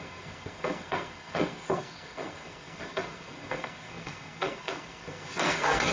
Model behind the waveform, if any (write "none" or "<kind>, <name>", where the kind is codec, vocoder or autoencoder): codec, SNAC